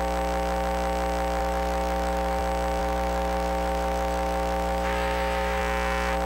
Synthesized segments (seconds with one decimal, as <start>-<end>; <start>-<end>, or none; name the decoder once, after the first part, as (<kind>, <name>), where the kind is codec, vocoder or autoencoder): 1.4-2.4 (autoencoder, DAC-VAE); 2.8-5.6